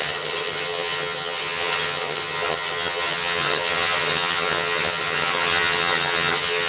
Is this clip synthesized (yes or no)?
yes